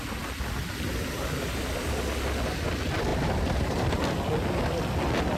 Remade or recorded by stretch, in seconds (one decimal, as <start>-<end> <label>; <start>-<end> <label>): 0.0-3.1 recorded; 3.1-4.0 remade; 4.0-5.4 recorded